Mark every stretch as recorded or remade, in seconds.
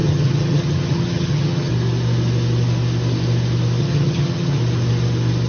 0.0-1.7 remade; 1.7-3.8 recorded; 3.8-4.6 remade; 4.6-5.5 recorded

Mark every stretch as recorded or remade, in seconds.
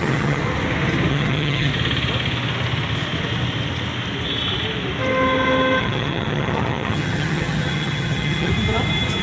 0.0-0.4 remade; 0.4-1.1 recorded; 1.1-1.7 remade; 1.7-5.8 recorded; 5.8-8.5 remade; 8.5-9.2 recorded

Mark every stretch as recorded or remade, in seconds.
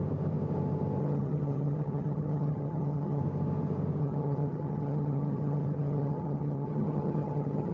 0.0-1.0 recorded; 1.0-3.2 remade; 3.2-4.0 recorded; 4.0-7.7 remade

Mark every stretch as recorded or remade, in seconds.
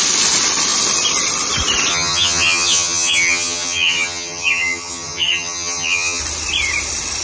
0.0-1.9 recorded; 1.9-6.2 remade; 6.2-7.2 recorded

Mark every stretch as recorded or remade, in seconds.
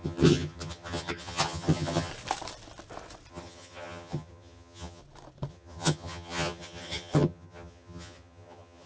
0.0-2.1 remade; 2.1-3.3 recorded; 3.3-5.0 remade; 5.0-5.5 recorded; 5.5-8.9 remade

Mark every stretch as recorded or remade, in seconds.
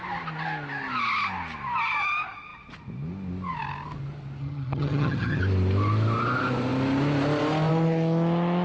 0.0-4.4 recorded; 4.4-5.4 remade; 5.4-8.6 recorded